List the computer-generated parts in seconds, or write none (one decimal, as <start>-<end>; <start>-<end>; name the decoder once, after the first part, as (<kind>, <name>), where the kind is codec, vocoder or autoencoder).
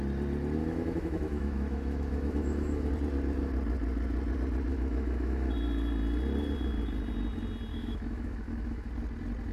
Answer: 0.6-2.9 (autoencoder, DAC-VAE); 4.7-5.5; 7.7-8.9